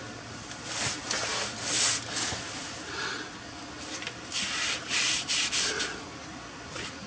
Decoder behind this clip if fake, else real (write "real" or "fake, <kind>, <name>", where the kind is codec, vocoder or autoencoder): real